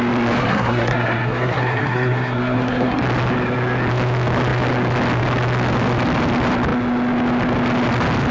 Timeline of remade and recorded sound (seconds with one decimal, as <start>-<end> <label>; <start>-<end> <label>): 0.0-0.4 recorded; 0.4-3.0 remade; 3.0-8.3 recorded